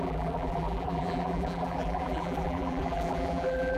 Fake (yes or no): yes